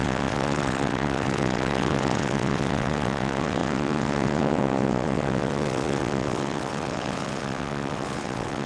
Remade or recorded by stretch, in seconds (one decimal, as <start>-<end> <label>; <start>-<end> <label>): 0.0-8.7 remade